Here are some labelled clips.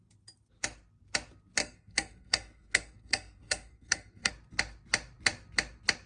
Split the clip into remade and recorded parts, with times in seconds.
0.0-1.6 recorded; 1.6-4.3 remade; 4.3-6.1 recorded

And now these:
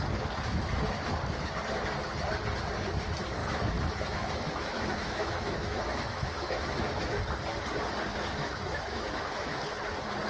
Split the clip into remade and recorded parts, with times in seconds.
0.0-3.4 recorded; 3.4-7.2 remade; 7.2-8.1 recorded; 8.1-9.6 remade; 9.6-10.3 recorded

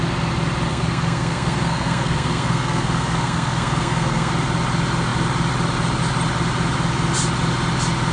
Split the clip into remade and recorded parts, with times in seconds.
0.0-0.7 recorded; 0.7-4.3 remade; 4.3-8.1 recorded

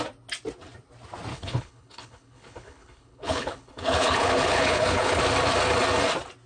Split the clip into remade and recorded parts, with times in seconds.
0.0-1.3 recorded; 1.3-5.2 remade; 5.2-6.5 recorded

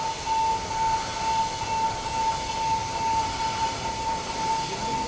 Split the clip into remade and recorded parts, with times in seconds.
0.0-2.8 recorded; 2.8-4.5 remade; 4.5-5.1 recorded

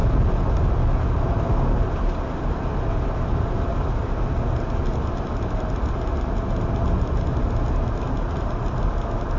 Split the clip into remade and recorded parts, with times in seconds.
0.0-9.4 recorded

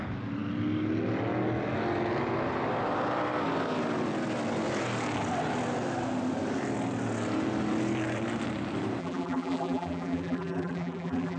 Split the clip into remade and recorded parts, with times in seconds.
0.0-9.0 recorded; 9.0-11.4 remade